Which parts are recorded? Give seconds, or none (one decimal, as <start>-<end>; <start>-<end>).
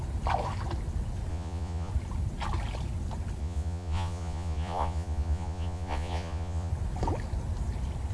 0.0-1.3; 1.9-3.4; 6.7-8.1